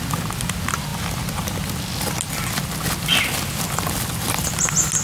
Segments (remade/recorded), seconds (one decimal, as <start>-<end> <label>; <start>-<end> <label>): 0.0-5.0 recorded

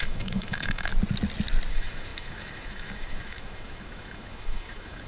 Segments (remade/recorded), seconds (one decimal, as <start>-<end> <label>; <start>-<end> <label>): 0.0-0.9 remade; 0.9-1.7 recorded; 1.7-5.1 remade

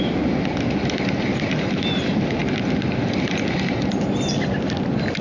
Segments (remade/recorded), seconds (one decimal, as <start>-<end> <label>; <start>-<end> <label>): 0.0-5.2 recorded

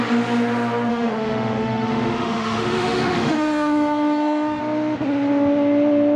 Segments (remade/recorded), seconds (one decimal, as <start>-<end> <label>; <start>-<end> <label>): 0.0-0.9 recorded; 0.9-4.6 remade; 4.6-6.2 recorded

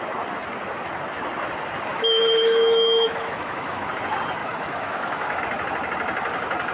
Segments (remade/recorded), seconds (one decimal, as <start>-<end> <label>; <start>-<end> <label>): 0.0-1.9 recorded; 1.9-3.9 remade; 3.9-4.4 recorded; 4.4-5.4 remade; 5.4-6.7 recorded

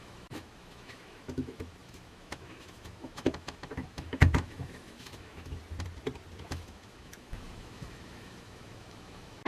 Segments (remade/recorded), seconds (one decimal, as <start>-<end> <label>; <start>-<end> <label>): 0.0-5.6 remade; 5.6-6.4 recorded; 6.4-9.5 remade

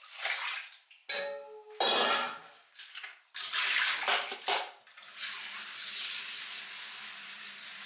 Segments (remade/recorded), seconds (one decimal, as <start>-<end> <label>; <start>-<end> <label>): 0.0-7.9 recorded